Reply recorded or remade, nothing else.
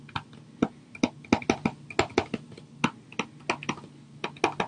recorded